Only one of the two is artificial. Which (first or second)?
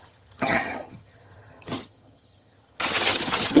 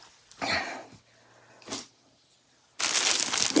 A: first